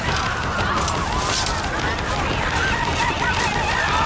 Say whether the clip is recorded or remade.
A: recorded